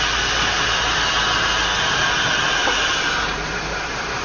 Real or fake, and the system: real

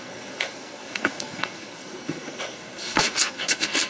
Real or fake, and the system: fake, codec, SNAC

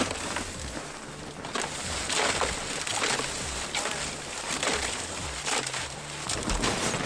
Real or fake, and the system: real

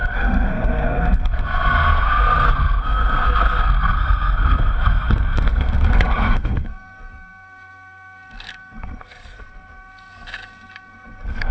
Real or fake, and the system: fake, codec, SNAC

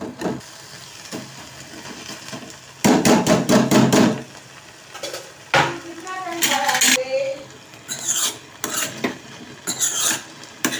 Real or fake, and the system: real